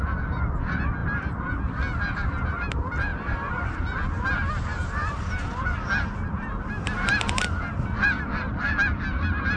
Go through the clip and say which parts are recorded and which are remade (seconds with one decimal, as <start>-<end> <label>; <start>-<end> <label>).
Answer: 0.0-9.6 recorded